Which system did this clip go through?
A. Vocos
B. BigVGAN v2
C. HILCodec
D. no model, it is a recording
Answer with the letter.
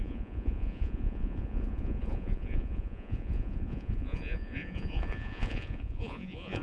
A